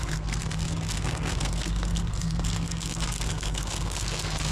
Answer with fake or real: fake